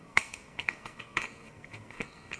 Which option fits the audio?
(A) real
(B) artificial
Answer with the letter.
B